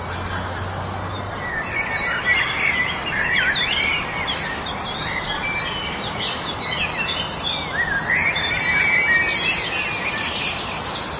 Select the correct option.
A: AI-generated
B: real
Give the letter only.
B